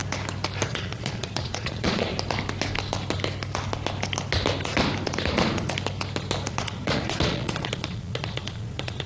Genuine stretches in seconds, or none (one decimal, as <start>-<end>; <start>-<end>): 0.0-0.7; 2.1-6.5